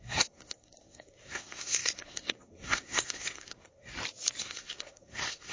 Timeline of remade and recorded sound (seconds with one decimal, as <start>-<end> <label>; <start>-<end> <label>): 0.0-3.9 remade; 3.9-4.4 recorded; 4.4-5.5 remade